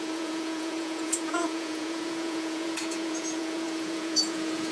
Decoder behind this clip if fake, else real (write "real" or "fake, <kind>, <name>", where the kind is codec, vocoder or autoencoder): fake, vocoder, Vocos